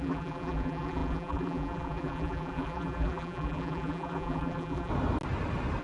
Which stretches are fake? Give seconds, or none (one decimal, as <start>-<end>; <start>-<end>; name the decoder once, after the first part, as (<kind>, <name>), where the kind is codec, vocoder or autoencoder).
0.0-4.9 (vocoder, BigVGAN v2)